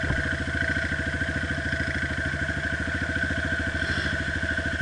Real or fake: real